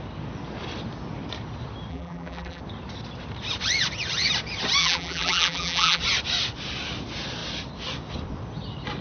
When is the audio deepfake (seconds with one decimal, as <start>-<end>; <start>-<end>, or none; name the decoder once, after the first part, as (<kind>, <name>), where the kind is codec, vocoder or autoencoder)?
1.9-2.6 (vocoder, BigVGAN v2); 4.8-6.0